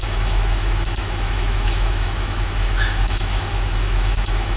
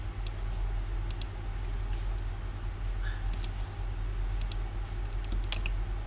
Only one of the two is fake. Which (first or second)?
first